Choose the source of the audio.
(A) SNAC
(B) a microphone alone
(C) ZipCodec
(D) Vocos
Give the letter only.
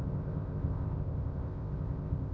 C